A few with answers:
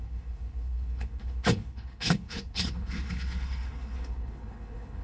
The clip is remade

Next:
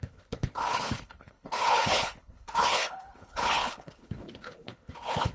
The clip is remade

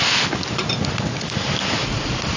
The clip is recorded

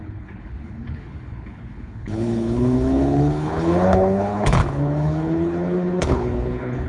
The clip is remade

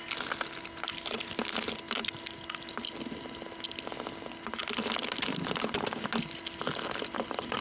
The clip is recorded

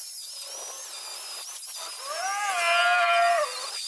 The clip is recorded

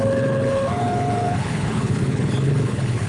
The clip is remade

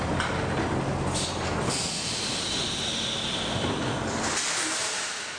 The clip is recorded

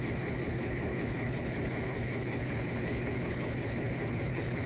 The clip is remade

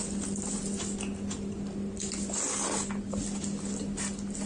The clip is recorded